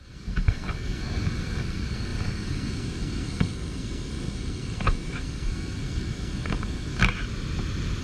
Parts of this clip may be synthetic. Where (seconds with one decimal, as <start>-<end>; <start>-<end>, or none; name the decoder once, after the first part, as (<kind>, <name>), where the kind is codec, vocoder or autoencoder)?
0.0-7.0 (codec, SNAC)